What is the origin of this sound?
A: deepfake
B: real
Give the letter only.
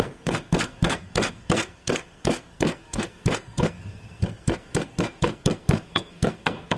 A